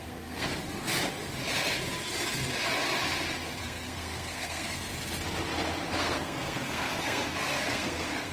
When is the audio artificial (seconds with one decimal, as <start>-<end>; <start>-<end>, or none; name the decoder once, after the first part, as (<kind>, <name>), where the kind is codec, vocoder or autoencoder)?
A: 0.0-0.5 (codec, SNAC); 3.6-4.9; 5.9-8.3